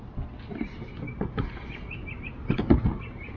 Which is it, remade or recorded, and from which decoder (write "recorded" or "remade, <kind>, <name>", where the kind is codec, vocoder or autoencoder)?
recorded